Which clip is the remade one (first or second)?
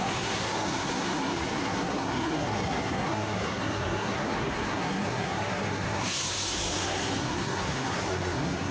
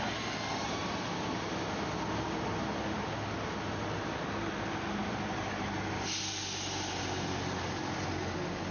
first